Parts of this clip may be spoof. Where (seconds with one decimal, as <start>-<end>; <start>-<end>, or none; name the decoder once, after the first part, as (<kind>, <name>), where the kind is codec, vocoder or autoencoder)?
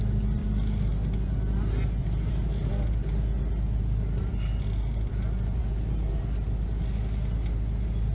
none